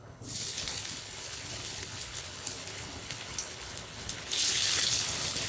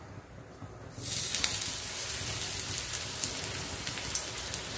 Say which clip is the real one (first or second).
second